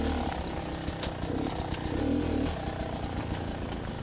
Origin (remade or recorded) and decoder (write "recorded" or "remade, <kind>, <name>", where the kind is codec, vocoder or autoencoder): recorded